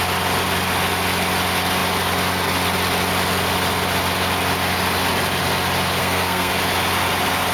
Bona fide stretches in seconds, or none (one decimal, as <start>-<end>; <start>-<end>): 0.0-6.0; 6.5-7.5